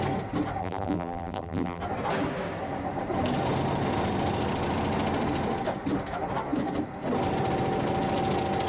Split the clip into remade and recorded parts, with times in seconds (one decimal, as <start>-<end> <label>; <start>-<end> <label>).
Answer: 0.0-0.6 recorded; 0.6-1.8 remade; 1.8-8.7 recorded